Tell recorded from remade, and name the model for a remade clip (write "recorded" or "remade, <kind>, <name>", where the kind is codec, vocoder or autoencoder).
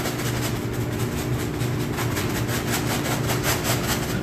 recorded